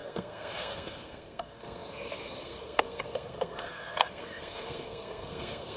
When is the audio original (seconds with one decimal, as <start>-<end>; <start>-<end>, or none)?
none